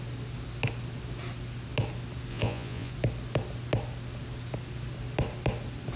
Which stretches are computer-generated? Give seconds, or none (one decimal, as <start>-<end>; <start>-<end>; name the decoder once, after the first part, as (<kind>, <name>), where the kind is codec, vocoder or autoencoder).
2.3-2.9 (vocoder, Vocos)